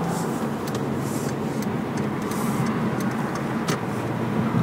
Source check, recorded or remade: recorded